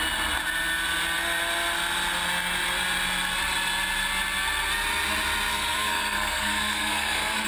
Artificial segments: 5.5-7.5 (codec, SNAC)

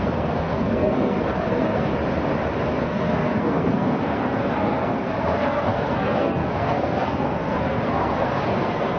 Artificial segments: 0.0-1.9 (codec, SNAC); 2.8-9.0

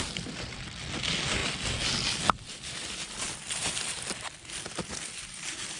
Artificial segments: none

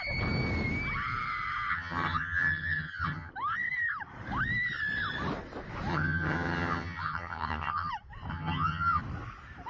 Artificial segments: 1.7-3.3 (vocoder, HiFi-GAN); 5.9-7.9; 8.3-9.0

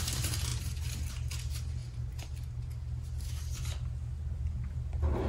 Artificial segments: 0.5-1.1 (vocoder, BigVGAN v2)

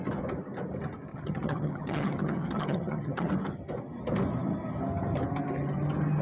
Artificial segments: 1.1-3.3 (vocoder, HiFi-GAN)

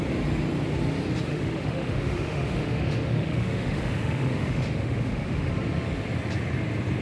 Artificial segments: 1.3-5.5 (autoencoder, DAC-VAE)

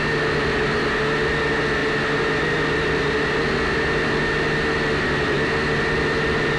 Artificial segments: none